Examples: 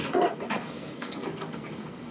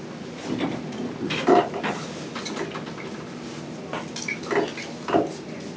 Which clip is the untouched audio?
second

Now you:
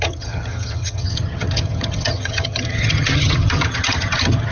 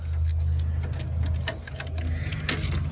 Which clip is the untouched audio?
second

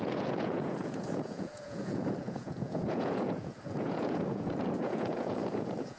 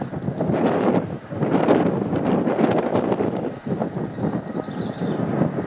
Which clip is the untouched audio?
second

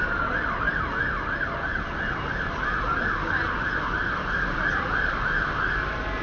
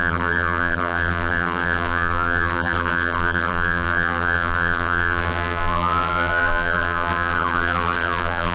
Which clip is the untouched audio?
first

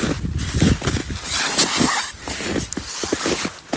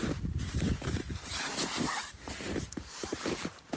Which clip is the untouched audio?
first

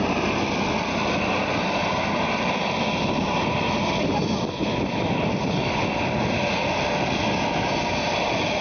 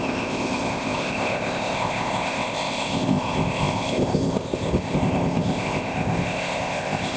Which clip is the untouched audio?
first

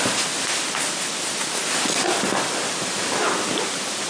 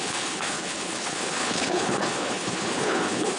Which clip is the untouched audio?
first